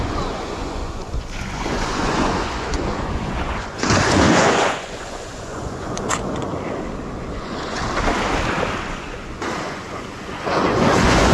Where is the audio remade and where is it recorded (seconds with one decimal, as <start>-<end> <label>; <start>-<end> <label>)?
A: 0.0-6.5 remade; 6.5-7.1 recorded; 7.1-7.8 remade; 7.8-8.8 recorded; 8.8-11.3 remade